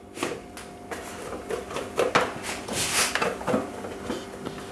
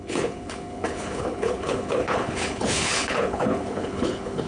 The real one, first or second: first